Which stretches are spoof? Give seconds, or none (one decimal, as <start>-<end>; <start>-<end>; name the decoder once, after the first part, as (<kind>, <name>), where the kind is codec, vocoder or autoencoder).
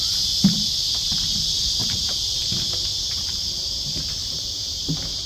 1.8-3.7 (vocoder, BigVGAN v2); 4.2-5.3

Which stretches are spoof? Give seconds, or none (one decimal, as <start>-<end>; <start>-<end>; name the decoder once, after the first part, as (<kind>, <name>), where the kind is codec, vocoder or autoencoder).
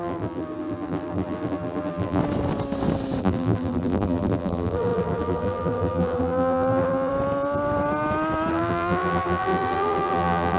0.0-2.2 (vocoder, BigVGAN v2); 3.2-7.1; 8.5-10.6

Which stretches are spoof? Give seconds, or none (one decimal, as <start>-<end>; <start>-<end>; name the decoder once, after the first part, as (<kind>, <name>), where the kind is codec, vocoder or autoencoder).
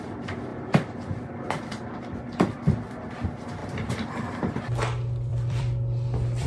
0.5-3.1 (vocoder, BigVGAN v2); 3.6-4.6; 5.3-6.5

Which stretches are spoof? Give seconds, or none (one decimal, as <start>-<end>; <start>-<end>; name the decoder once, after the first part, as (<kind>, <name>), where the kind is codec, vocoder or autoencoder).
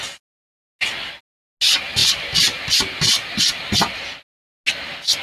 2.0-2.8 (vocoder, BigVGAN v2)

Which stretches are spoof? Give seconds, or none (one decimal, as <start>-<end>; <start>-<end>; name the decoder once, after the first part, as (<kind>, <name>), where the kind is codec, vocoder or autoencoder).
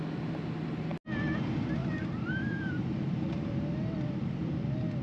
1.8-3.5 (vocoder, BigVGAN v2)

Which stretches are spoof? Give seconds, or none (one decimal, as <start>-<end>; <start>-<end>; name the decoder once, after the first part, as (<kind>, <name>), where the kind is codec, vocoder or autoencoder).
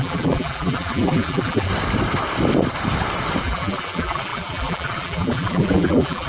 0.0-1.7 (vocoder, BigVGAN v2); 3.4-6.3